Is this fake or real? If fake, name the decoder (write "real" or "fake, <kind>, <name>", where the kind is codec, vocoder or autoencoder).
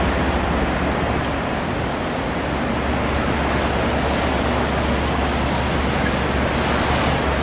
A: real